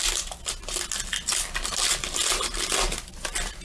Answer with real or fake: real